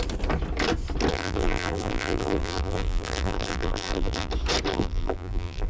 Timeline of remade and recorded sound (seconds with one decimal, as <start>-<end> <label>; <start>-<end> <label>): 0.0-1.1 recorded; 1.1-4.3 remade; 4.3-4.7 recorded; 4.7-5.7 remade